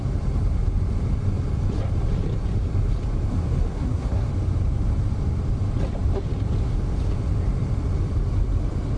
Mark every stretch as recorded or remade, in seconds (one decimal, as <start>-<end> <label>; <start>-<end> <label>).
0.0-3.3 recorded; 3.3-4.3 remade; 4.3-9.0 recorded